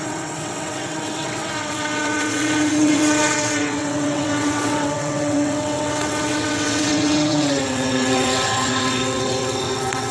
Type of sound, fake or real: fake